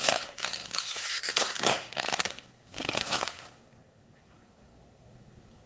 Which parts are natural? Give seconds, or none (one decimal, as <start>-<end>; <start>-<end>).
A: none